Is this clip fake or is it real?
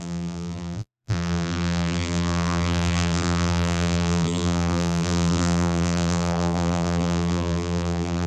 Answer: fake